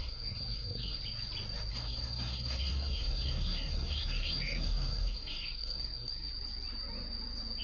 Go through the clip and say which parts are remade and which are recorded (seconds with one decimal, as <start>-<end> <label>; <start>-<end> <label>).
0.0-1.0 remade; 1.0-1.7 recorded; 1.7-6.3 remade; 6.3-7.6 recorded